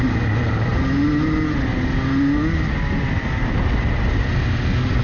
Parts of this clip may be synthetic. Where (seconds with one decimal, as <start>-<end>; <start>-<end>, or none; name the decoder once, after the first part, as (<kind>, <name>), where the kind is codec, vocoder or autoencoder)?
none